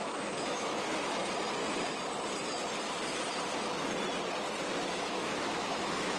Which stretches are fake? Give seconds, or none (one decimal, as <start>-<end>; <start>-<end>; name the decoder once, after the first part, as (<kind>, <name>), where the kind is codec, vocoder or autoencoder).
0.0-1.2 (autoencoder, DAC-VAE); 4.9-6.2